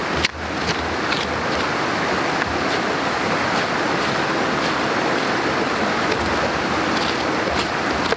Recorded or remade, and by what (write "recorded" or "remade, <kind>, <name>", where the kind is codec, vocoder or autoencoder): recorded